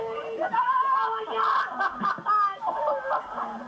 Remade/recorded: recorded